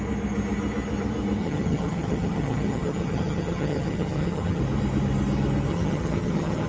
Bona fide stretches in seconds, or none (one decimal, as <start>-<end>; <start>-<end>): 0.0-1.4; 4.6-5.7